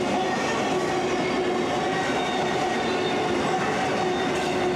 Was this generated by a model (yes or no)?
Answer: no